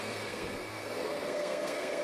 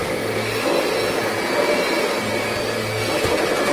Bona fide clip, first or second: second